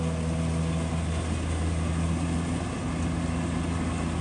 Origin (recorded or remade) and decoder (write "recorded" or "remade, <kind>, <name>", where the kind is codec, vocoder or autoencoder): recorded